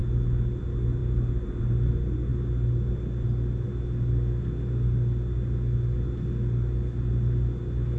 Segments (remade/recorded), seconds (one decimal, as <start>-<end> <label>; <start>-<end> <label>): 0.0-8.0 recorded